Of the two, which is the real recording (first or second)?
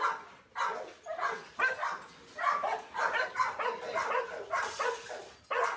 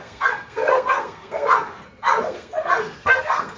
first